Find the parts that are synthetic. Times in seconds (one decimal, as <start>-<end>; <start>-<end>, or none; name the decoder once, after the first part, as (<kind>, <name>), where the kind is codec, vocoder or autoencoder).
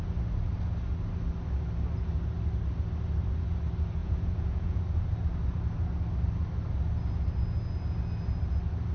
4.0-4.8 (vocoder, Vocos)